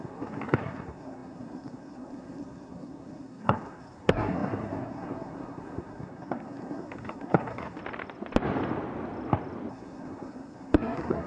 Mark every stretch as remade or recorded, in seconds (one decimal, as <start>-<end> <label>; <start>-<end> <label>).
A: 0.0-7.8 remade; 7.8-9.7 recorded; 9.7-11.3 remade